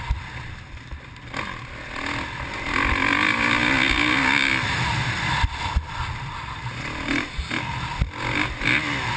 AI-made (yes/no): no